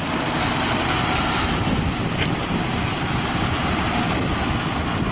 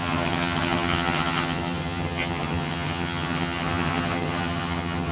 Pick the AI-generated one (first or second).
second